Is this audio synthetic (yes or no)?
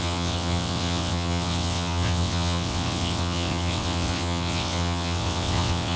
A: yes